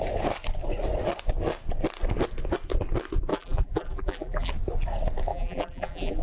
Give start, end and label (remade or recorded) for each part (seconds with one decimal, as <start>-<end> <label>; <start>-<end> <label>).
0.0-3.3 recorded; 3.3-4.5 remade; 4.5-5.3 recorded; 5.3-6.2 remade